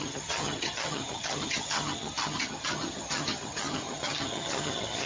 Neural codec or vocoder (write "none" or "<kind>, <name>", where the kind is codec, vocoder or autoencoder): vocoder, HiFi-GAN